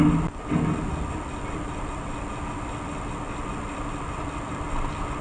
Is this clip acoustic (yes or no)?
yes